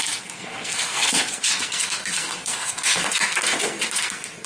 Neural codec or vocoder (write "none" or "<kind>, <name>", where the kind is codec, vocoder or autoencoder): codec, SNAC